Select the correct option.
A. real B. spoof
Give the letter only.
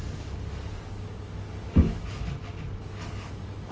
B